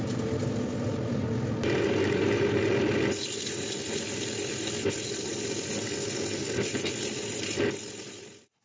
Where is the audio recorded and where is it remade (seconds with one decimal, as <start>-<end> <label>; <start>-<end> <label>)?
0.0-8.6 recorded

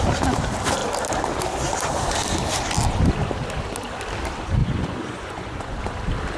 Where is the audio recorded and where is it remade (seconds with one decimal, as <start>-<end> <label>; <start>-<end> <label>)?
0.0-4.6 recorded; 4.6-5.8 remade; 5.8-6.4 recorded

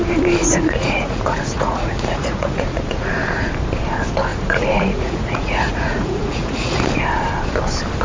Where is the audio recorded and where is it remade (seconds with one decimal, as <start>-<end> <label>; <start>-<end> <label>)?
0.0-0.4 recorded; 0.4-3.1 remade; 3.1-4.3 recorded; 4.3-6.8 remade; 6.8-8.0 recorded

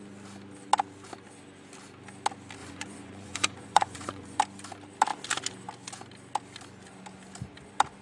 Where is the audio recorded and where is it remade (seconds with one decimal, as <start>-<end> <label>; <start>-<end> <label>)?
0.0-2.6 recorded; 2.6-4.4 remade; 4.4-8.0 recorded